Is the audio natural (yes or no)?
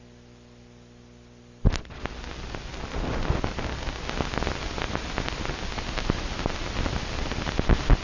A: yes